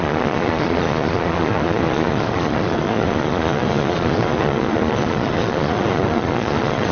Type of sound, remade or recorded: remade